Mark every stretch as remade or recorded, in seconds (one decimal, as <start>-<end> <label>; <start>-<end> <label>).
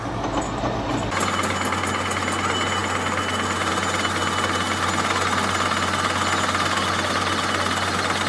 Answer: 0.0-8.3 recorded